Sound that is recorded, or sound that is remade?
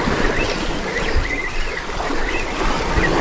recorded